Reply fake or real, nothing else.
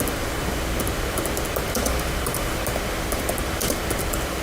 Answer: real